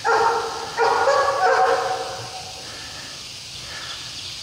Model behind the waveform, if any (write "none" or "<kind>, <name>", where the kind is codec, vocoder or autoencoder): none